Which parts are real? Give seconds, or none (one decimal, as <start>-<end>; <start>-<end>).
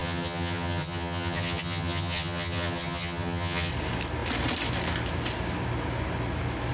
3.7-6.7